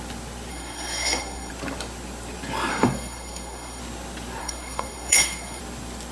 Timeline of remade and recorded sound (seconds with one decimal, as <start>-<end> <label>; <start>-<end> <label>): 0.0-0.5 recorded; 0.5-1.5 remade; 1.5-2.7 recorded; 2.7-3.8 remade; 3.8-4.4 recorded; 4.4-5.6 remade; 5.6-6.1 recorded